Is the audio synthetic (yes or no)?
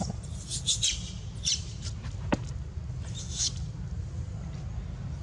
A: no